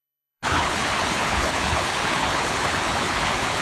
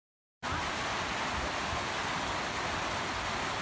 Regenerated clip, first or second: first